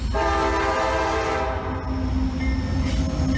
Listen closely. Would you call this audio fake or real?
real